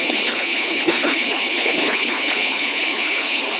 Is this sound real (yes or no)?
no